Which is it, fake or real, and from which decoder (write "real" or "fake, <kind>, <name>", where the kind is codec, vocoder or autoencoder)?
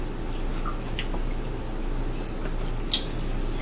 real